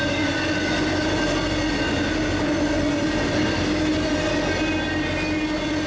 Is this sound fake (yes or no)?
no